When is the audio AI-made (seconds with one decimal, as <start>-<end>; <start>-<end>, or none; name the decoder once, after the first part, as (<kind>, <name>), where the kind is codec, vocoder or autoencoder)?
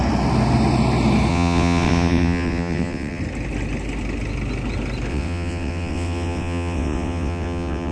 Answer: 1.3-3.2 (vocoder, WaveNeXt); 5.1-7.9